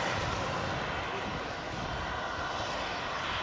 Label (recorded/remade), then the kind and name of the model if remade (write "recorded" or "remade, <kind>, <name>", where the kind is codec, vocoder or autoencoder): recorded